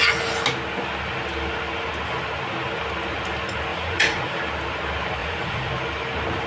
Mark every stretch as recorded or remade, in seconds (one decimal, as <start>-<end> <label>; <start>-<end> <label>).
0.0-3.7 recorded; 3.7-4.4 remade; 4.4-5.2 recorded; 5.2-5.7 remade; 5.7-6.5 recorded